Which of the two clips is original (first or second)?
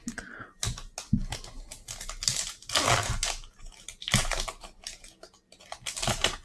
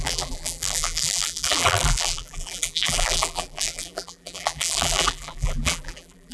first